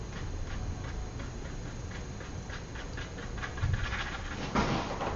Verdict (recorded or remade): recorded